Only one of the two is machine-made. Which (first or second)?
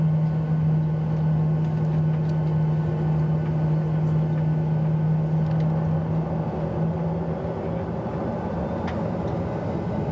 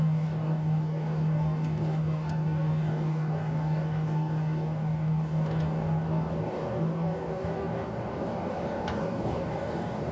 second